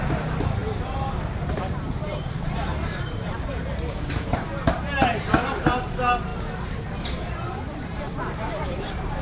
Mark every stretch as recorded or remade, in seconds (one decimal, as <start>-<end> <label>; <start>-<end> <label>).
0.0-6.3 remade; 6.3-7.0 recorded; 7.0-9.2 remade